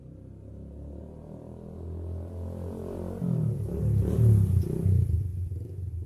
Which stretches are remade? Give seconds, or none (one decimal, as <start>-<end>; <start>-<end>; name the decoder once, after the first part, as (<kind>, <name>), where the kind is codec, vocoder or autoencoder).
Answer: none